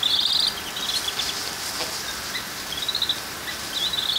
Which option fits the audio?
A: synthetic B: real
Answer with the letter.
B